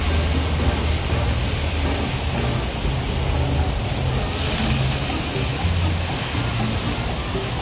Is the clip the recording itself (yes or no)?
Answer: yes